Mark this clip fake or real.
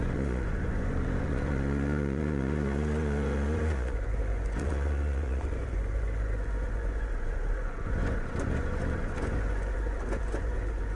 fake